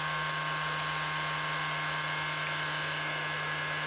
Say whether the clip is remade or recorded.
recorded